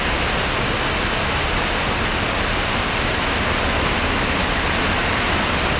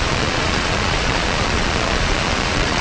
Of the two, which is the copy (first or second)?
second